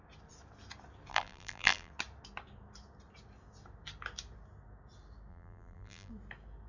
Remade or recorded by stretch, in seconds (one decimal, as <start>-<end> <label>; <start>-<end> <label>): 0.0-1.1 recorded; 1.1-1.9 remade; 1.9-5.3 recorded; 5.3-6.1 remade; 6.1-6.7 recorded